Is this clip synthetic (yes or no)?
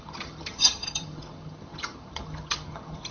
yes